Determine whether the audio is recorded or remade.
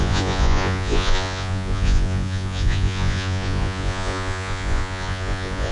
remade